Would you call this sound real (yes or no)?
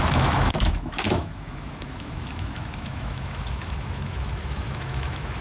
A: no